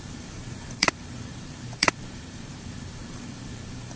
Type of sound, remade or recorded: remade